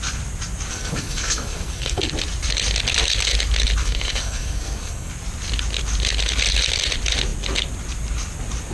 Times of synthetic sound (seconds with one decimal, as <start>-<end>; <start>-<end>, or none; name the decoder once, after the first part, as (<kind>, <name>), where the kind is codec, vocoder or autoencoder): 0.7-2.1 (codec, SNAC); 3.8-5.1